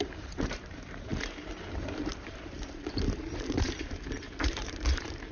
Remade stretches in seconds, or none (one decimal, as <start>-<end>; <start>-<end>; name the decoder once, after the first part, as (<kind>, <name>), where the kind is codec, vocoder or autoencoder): 0.0-1.1 (vocoder, BigVGAN v2); 1.7-5.3